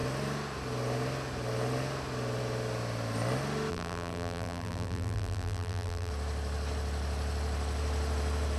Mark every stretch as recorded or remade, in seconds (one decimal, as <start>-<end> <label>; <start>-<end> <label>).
0.0-3.7 recorded; 3.7-6.1 remade; 6.1-8.6 recorded